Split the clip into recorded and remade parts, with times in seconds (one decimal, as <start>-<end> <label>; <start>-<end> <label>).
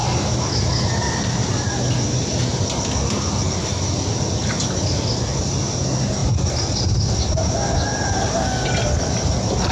0.0-9.7 recorded